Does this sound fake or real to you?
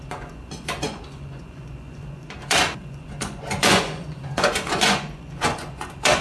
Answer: fake